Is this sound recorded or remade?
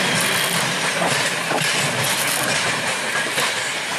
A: recorded